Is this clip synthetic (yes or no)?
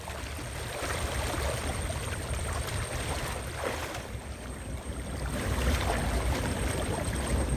no